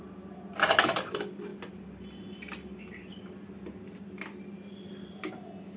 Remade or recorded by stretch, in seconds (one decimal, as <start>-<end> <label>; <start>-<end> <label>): 0.0-5.8 recorded